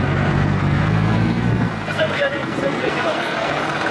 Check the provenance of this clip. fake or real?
fake